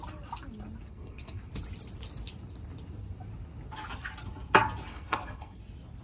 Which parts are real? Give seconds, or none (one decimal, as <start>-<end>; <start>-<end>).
0.0-0.9; 1.4-4.9; 5.6-6.0